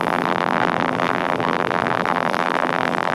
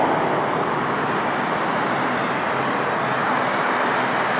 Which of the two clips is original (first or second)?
second